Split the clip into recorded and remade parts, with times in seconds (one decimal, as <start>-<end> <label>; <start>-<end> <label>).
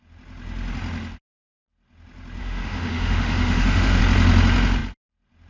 0.0-2.4 recorded; 2.4-4.0 remade; 4.0-5.5 recorded